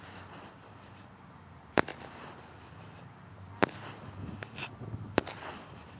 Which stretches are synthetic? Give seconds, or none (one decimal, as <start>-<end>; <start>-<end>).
0.0-1.9; 5.2-6.0